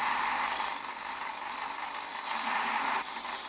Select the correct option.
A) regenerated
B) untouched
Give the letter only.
B